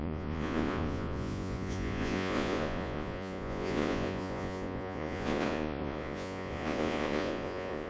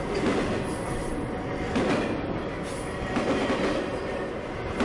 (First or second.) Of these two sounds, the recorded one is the second